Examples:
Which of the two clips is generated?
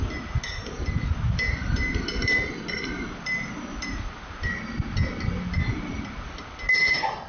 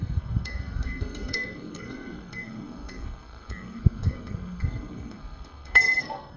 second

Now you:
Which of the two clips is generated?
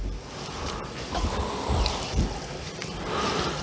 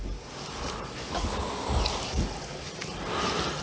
first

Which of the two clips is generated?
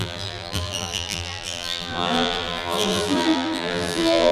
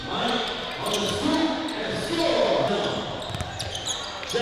first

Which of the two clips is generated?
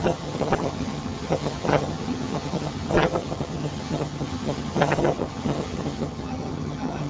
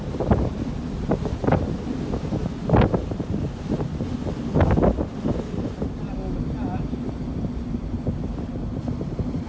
first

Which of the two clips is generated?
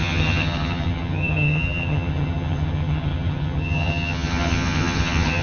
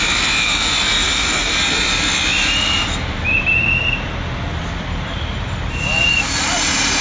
first